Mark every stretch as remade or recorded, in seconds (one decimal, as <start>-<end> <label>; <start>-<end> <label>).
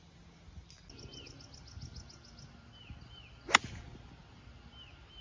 0.0-5.2 recorded